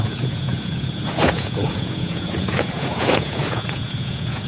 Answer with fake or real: fake